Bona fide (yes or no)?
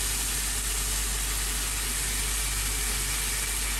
yes